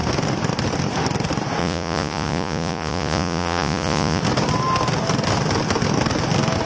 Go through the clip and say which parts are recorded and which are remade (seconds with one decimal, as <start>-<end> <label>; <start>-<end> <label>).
0.0-1.6 recorded; 1.6-4.2 remade; 4.2-6.7 recorded